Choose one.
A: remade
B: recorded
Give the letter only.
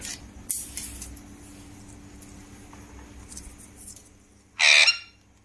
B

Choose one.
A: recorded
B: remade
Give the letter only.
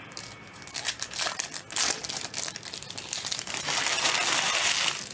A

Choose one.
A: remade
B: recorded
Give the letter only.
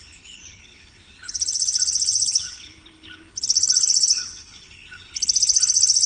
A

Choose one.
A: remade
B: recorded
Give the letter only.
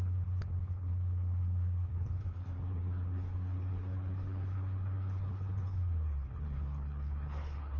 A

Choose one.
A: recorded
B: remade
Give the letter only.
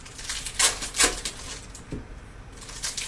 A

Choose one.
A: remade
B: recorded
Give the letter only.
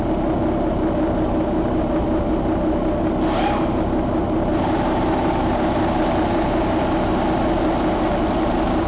B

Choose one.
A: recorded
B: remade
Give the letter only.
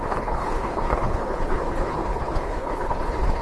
B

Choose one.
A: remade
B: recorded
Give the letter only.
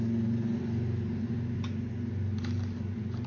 B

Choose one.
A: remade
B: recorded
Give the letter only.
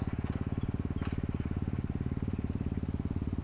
B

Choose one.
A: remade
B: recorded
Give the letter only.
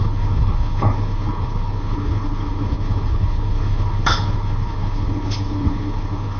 A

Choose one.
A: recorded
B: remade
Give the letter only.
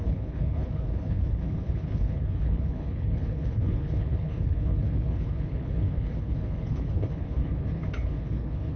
B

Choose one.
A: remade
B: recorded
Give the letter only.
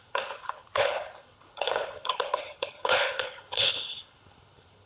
A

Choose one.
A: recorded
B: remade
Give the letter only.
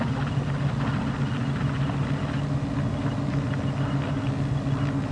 A